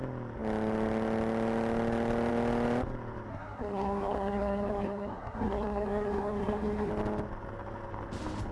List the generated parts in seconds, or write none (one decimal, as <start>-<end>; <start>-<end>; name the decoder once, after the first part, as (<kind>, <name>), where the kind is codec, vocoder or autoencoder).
3.3-6.9 (codec, SNAC)